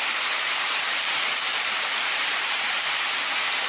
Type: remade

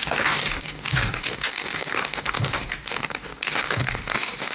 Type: remade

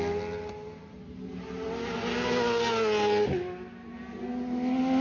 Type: recorded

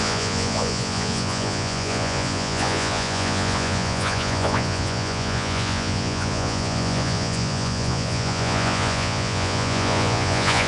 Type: remade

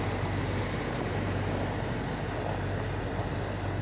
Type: recorded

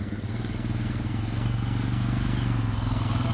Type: remade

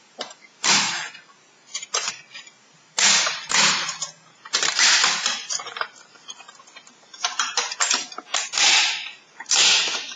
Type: remade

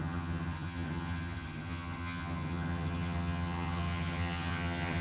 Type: remade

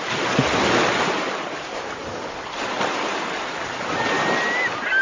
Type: recorded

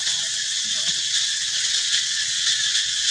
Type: remade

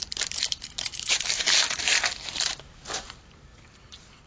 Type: remade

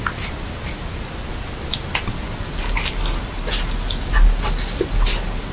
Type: recorded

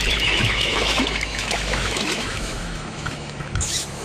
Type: remade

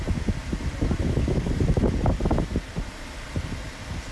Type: recorded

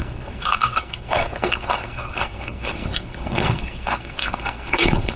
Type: remade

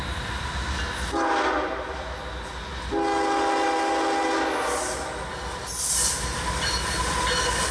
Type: recorded